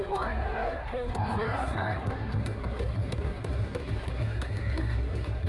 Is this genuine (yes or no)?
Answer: no